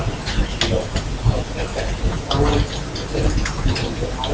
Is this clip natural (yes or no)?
yes